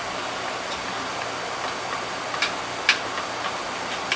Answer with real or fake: real